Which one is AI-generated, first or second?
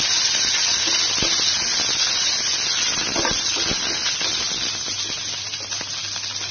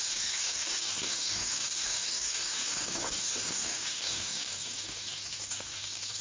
second